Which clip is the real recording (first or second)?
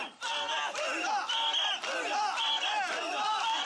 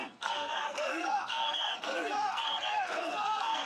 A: first